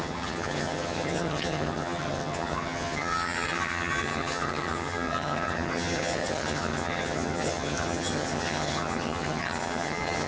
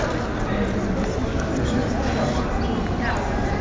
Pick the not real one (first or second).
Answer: first